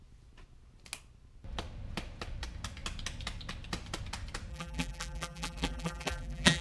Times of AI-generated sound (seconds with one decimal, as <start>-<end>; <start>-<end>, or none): 4.5-6.6